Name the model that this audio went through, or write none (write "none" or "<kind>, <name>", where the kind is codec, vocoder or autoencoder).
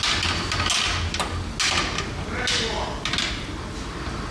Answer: none